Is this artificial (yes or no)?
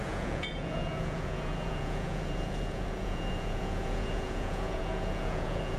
yes